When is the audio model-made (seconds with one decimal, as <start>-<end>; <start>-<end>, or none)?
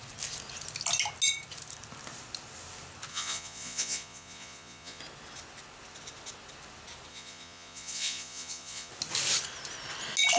3.1-5.0; 7.1-8.9